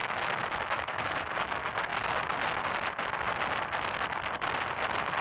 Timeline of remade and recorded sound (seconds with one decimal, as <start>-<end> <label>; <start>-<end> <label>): 0.0-1.2 remade; 1.2-5.2 recorded